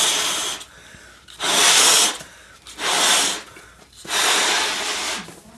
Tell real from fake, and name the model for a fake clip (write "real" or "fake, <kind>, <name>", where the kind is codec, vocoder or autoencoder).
real